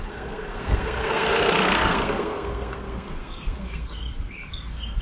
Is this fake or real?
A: fake